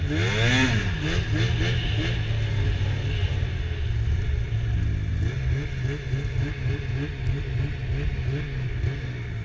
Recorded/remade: recorded